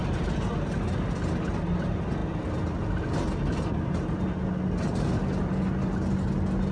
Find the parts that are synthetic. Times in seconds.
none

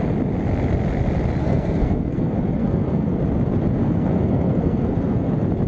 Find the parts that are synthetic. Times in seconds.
1.4-3.2 (codec, SNAC); 3.8-5.3

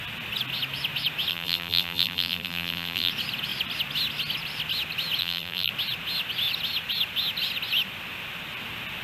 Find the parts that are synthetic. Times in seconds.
1.3-3.1 (vocoder, BigVGAN v2); 5.2-5.7

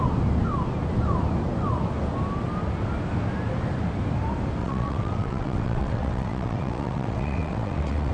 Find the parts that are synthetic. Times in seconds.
4.6-8.1 (vocoder, WaveNeXt)

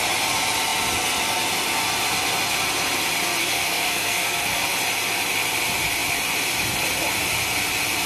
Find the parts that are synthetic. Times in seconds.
3.4-4.5 (codec, SNAC)

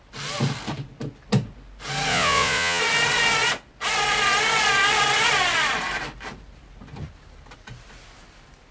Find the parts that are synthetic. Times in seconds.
2.1-2.8 (vocoder, Vocos)

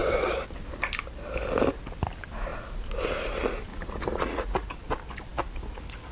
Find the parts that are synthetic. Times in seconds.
3.7-4.7 (vocoder, Vocos)